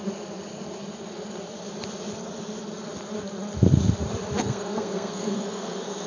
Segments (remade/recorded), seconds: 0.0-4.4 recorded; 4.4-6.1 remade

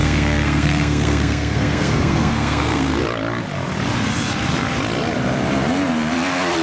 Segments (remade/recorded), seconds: 0.0-3.0 remade; 3.0-6.6 recorded

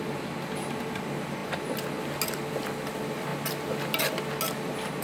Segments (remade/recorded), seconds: 0.0-5.0 recorded

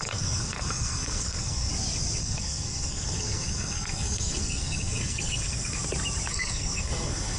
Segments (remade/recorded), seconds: 0.0-1.7 remade; 1.7-2.2 recorded; 2.2-5.8 remade; 5.8-6.3 recorded; 6.3-7.4 remade

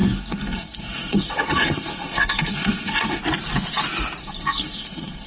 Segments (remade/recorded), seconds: 0.0-3.2 remade; 3.2-4.2 recorded; 4.2-5.3 remade

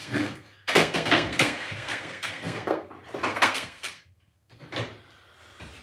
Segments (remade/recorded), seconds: 0.0-2.9 remade; 2.9-3.3 recorded; 3.3-4.6 remade; 4.6-5.8 recorded